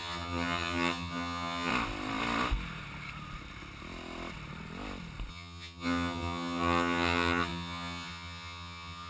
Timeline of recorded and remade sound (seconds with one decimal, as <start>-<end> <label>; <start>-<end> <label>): 0.0-1.7 remade; 1.7-5.3 recorded; 5.3-9.1 remade